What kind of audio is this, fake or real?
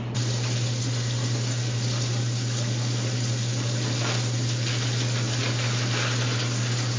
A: real